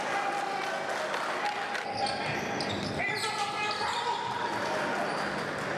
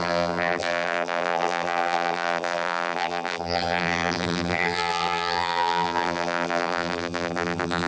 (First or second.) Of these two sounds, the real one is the first